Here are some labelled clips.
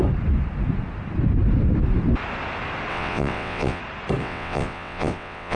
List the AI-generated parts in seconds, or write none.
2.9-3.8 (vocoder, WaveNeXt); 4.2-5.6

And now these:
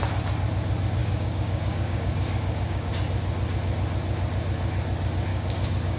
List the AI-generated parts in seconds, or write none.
1.0-2.9 (codec, DAC); 5.3-6.0

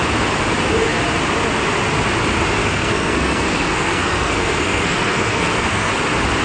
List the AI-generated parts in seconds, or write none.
2.6-5.9 (codec, SNAC)

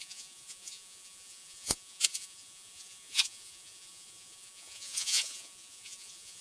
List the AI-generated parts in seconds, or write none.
0.0-6.4 (vocoder, Vocos)